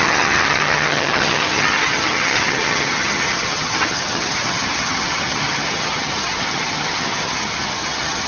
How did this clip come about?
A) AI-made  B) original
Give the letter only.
A